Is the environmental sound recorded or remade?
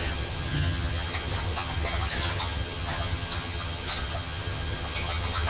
remade